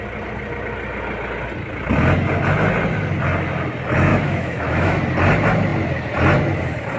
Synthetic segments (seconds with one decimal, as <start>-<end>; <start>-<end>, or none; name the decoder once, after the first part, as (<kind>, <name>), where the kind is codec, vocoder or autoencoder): 4.1-5.0 (autoencoder, DAC-VAE)